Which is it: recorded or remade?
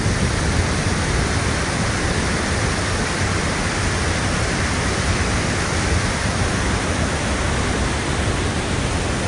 remade